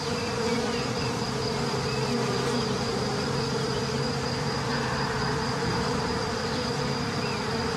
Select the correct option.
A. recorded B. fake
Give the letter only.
B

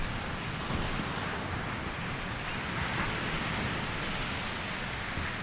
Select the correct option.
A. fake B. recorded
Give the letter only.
B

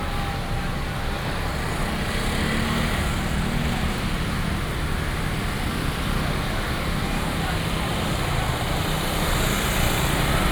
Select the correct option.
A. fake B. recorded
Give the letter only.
B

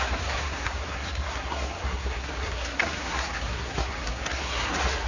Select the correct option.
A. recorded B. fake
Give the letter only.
B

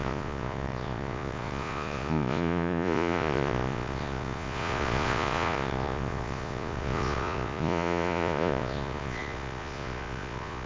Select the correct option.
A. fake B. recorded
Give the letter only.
A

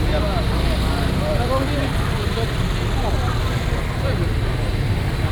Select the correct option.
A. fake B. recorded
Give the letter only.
B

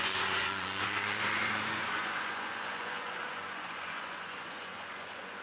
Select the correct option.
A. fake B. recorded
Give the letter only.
A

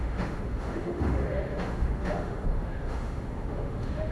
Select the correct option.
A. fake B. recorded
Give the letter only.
A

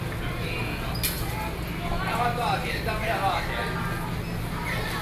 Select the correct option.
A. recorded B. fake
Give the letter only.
A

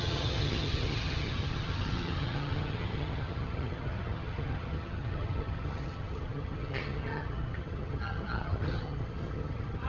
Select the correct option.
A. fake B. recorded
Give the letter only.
A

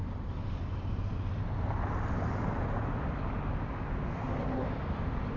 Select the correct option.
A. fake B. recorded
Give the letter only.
B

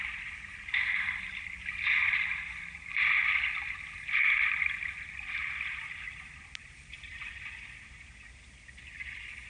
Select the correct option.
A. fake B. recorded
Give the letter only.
B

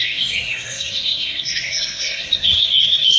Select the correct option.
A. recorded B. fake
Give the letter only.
B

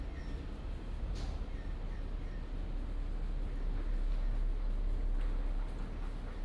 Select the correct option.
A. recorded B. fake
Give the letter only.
A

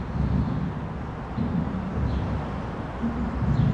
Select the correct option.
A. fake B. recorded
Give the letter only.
B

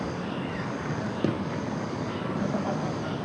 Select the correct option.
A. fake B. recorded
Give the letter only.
A